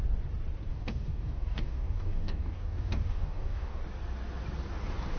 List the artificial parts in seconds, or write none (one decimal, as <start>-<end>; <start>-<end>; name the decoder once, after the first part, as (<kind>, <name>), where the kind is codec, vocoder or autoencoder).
0.7-3.8 (codec, DAC)